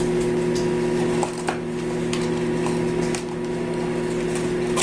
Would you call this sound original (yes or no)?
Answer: yes